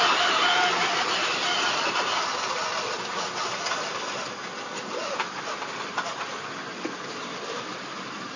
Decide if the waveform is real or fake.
real